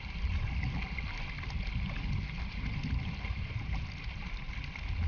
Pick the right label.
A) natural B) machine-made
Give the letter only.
A